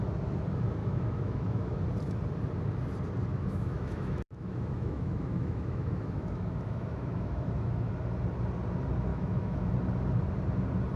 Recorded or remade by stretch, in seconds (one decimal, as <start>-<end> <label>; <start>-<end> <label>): 0.0-0.8 recorded; 0.8-1.8 remade; 1.8-3.3 recorded; 3.3-7.9 remade; 7.9-9.1 recorded; 9.1-9.7 remade; 9.7-11.0 recorded